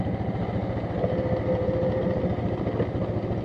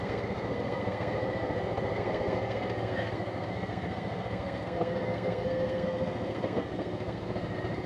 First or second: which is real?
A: first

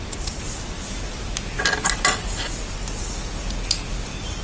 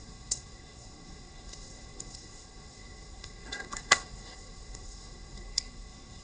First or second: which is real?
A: first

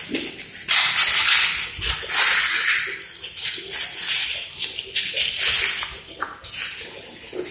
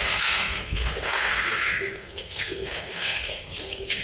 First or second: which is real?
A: first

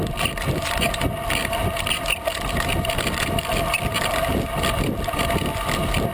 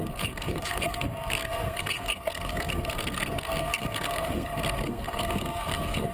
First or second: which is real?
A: first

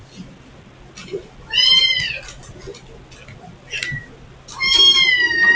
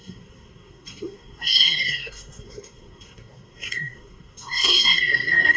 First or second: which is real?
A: first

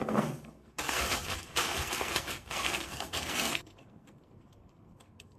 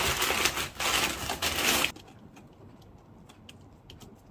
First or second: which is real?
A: second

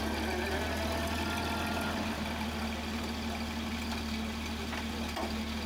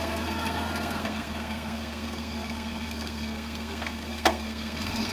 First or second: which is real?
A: first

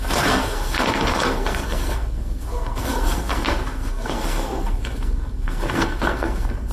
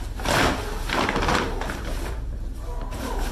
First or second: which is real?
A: second